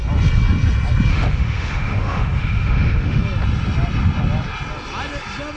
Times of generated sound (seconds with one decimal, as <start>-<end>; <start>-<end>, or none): 1.1-3.2